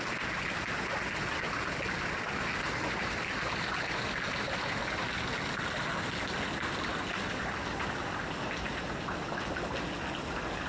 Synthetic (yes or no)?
no